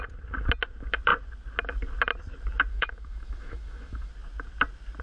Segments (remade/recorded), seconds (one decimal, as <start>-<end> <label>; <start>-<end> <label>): 0.0-2.7 recorded; 2.7-4.1 remade; 4.1-5.0 recorded